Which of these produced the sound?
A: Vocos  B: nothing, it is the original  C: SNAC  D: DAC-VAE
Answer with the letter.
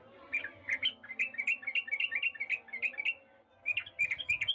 B